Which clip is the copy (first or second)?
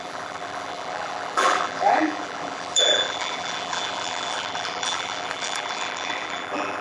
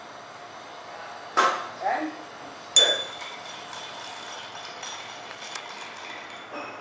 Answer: first